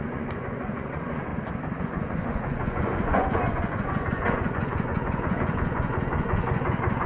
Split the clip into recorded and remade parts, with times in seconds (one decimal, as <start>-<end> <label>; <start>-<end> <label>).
0.0-1.3 remade; 1.3-1.8 recorded; 1.8-7.1 remade

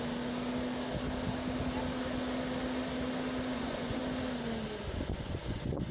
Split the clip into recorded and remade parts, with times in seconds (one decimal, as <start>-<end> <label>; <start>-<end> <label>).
0.0-3.5 recorded; 3.5-4.0 remade; 4.0-4.9 recorded; 4.9-5.9 remade

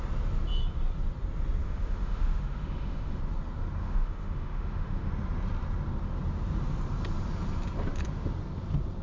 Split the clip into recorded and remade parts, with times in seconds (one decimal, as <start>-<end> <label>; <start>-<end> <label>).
0.0-1.6 recorded; 1.6-3.2 remade; 3.2-3.8 recorded; 3.8-5.1 remade; 5.1-9.0 recorded